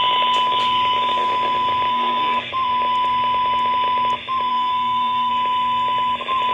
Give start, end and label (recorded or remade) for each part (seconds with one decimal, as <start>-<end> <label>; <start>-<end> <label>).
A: 0.0-1.9 recorded; 1.9-2.5 remade; 2.5-4.5 recorded; 4.5-5.3 remade; 5.3-6.5 recorded

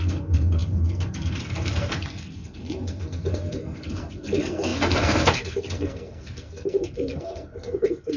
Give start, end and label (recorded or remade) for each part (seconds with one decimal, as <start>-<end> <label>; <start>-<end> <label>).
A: 0.0-8.2 remade

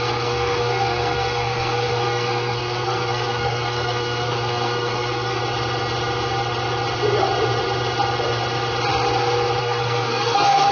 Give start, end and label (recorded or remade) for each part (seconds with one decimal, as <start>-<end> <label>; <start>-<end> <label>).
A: 0.0-5.4 remade; 5.4-9.6 recorded; 9.6-10.7 remade

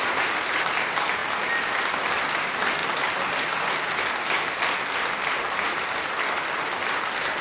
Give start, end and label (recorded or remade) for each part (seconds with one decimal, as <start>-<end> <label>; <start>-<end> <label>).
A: 0.0-7.4 recorded

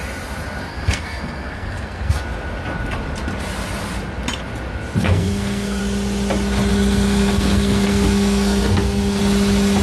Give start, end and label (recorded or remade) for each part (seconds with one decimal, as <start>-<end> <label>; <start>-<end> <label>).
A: 0.0-0.7 recorded; 0.7-2.2 remade; 2.2-5.0 recorded; 5.0-5.8 remade; 5.8-6.7 recorded; 6.7-9.2 remade; 9.2-9.8 recorded

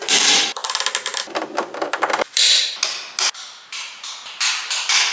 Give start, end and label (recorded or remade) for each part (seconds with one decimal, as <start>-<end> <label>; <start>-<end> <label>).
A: 0.0-5.1 recorded

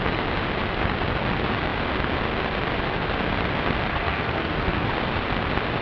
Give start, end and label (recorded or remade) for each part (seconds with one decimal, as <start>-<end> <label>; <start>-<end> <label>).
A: 0.0-3.9 recorded; 3.9-4.9 remade; 4.9-5.8 recorded